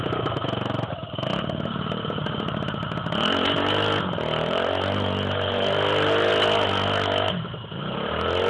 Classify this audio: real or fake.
real